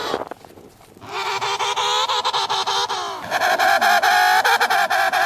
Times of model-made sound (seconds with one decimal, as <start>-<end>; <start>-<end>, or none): 0.0-0.7